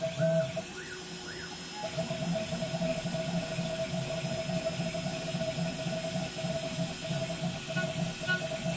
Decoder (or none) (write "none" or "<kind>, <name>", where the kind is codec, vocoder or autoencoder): none